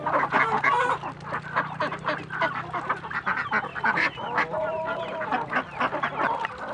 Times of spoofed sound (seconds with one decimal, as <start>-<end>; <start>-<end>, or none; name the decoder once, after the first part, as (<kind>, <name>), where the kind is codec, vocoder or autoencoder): 3.7-5.6 (vocoder, BigVGAN v2)